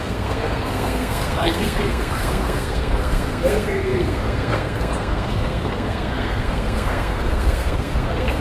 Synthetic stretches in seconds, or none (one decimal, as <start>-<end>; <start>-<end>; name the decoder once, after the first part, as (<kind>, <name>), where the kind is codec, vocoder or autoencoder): 0.0-8.4 (codec, SNAC)